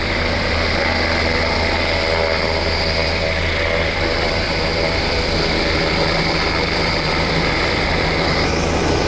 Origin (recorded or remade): remade